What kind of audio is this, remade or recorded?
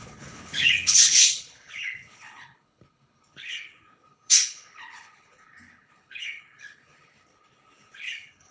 remade